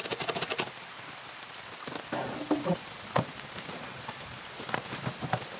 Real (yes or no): no